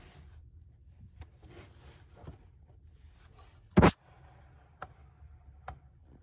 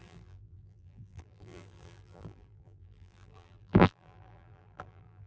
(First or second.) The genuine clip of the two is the first